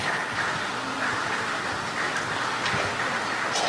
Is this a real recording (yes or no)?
yes